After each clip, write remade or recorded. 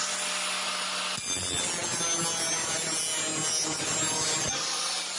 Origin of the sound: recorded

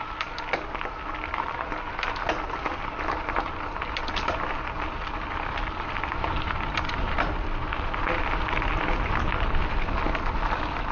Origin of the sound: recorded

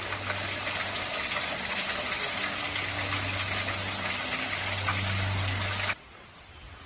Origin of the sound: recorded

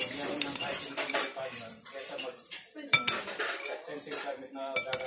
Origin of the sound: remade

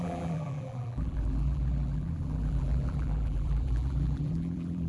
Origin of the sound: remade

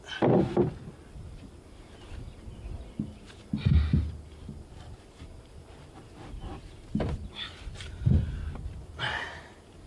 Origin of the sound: recorded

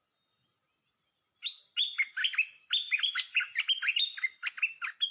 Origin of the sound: recorded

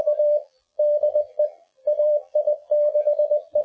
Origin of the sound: remade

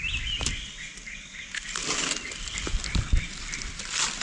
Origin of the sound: recorded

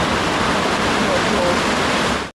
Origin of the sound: remade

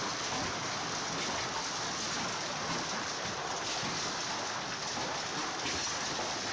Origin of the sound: recorded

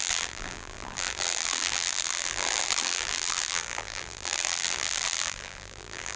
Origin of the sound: remade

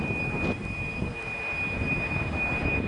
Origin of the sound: recorded